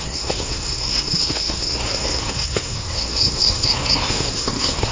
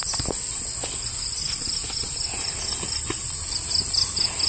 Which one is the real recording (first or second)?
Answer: second